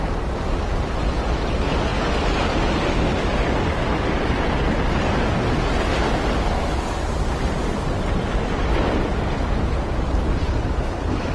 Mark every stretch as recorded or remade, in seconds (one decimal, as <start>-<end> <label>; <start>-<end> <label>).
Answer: 0.0-5.9 recorded; 5.9-6.5 remade; 6.5-11.3 recorded